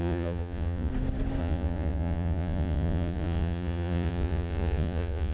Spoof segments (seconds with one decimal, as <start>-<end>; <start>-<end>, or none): 0.0-0.9; 1.4-5.3